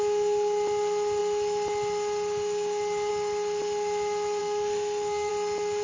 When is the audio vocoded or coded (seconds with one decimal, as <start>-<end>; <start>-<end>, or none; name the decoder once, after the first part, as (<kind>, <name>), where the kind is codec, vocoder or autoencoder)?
4.4-5.3 (codec, SNAC)